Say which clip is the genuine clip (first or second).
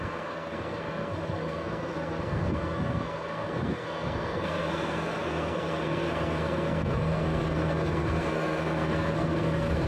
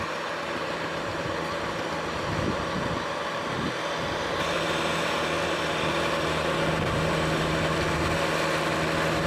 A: second